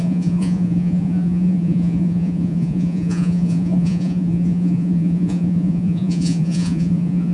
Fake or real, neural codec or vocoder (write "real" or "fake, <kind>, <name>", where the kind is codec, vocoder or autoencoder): fake, vocoder, Vocos